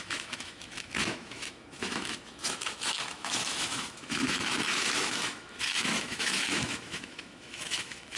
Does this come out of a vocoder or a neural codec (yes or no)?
yes